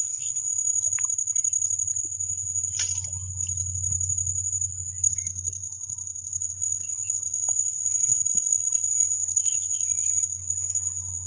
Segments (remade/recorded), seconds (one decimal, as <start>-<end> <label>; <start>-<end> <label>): 0.0-0.5 remade; 0.5-5.1 recorded; 5.1-11.3 remade